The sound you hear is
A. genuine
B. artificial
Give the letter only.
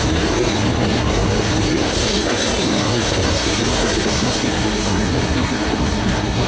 B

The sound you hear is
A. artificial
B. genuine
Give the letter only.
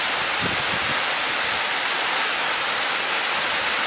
B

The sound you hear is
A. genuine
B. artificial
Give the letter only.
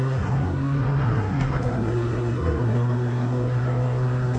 B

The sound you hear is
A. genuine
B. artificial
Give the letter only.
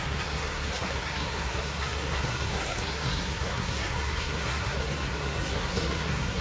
B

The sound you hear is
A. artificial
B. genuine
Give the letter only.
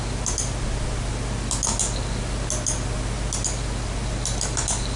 B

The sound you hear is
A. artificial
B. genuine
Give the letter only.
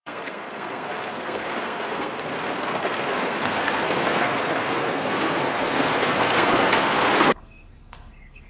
A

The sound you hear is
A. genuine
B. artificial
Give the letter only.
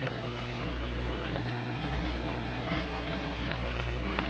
B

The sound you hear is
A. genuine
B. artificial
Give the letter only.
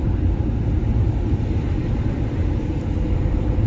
A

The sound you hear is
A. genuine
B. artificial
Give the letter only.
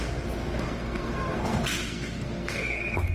B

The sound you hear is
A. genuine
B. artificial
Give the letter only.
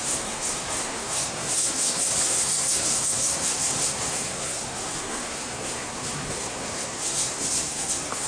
B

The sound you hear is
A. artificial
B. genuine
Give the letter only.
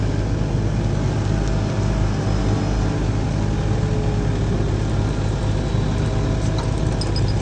B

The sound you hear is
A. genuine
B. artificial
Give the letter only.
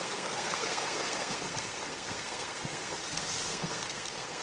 B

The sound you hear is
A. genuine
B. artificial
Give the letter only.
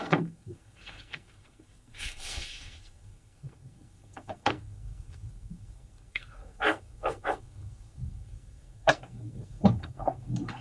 B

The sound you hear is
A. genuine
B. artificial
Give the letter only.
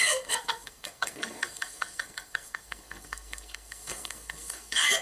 B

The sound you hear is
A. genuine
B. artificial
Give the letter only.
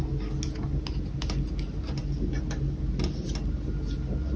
A